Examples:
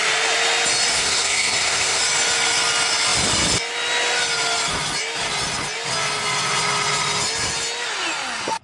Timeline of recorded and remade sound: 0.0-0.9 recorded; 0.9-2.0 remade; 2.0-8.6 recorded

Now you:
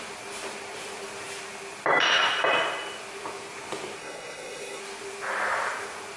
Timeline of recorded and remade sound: 0.0-4.0 recorded; 4.0-4.8 remade; 4.8-6.2 recorded

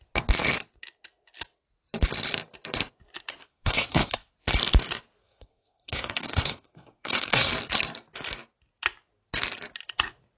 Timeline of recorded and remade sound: 0.0-3.3 recorded; 3.3-4.3 remade; 4.3-5.2 recorded; 5.2-7.5 remade; 7.5-10.4 recorded

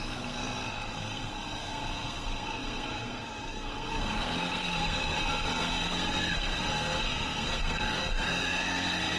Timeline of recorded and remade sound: 0.0-0.4 remade; 0.4-0.9 recorded; 0.9-9.2 remade